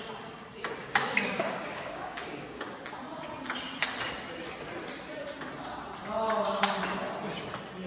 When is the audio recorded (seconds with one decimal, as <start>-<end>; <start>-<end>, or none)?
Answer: 0.0-0.8; 2.7-7.9